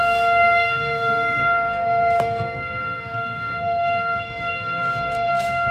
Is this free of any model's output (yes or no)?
no